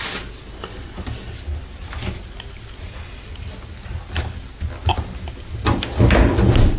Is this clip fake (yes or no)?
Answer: no